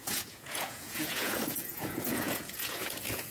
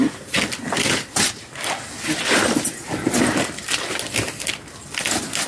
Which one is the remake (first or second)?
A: first